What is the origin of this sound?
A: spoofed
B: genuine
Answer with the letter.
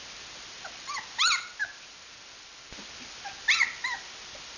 B